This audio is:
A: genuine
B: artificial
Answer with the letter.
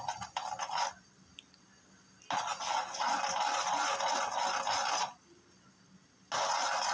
A